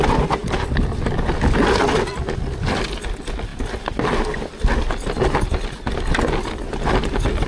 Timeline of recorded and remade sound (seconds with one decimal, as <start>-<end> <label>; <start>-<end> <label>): 0.0-7.5 recorded